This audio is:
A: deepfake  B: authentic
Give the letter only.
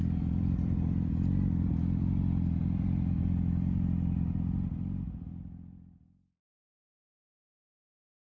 A